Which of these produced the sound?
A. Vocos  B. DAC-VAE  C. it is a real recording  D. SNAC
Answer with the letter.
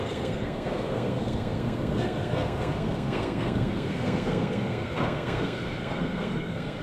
D